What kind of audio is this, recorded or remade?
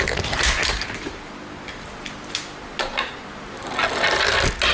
recorded